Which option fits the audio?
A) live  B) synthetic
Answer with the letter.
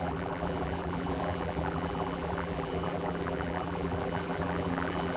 B